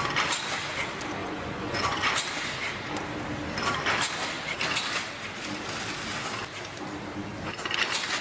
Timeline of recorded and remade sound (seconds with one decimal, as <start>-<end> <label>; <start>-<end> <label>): 0.0-1.2 recorded; 1.2-2.1 remade; 2.1-8.2 recorded